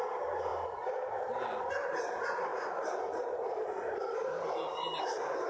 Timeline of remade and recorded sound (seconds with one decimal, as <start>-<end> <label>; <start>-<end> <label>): 0.0-5.5 recorded